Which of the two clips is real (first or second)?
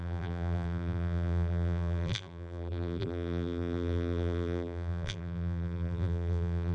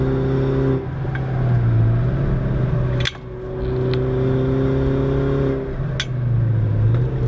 second